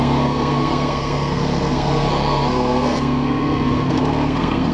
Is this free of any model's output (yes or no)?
no